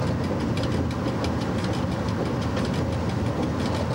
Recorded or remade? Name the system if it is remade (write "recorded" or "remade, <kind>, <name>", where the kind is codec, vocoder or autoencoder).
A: recorded